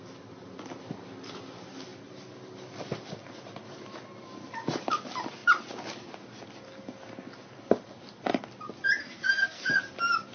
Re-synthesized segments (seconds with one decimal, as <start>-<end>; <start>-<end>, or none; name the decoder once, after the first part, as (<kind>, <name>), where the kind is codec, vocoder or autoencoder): 9.0-9.7 (codec, SNAC)